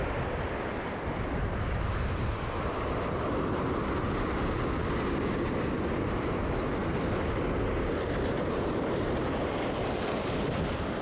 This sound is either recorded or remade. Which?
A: recorded